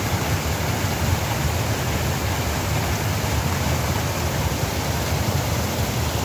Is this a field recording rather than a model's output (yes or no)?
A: yes